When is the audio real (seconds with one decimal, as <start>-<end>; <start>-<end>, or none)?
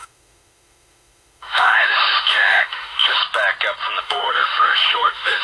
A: 3.2-4.0